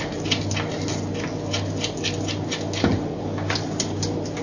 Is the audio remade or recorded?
recorded